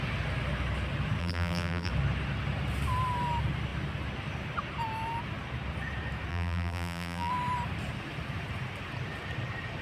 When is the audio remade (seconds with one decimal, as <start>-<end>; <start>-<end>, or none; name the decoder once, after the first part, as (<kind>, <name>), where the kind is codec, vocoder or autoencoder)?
1.2-1.9 (vocoder, BigVGAN v2); 6.3-7.3